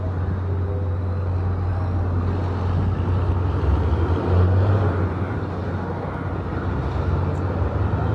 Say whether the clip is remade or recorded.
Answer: recorded